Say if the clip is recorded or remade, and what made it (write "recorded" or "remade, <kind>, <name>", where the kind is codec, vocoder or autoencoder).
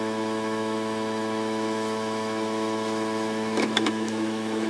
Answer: remade, autoencoder, DAC-VAE